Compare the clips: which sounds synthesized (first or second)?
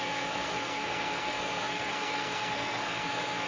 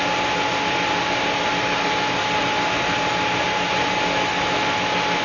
first